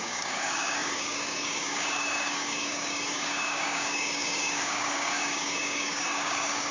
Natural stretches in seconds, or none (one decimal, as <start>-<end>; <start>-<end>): none